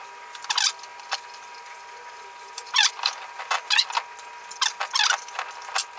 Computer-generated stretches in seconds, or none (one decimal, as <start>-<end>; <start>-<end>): 0.9-3.7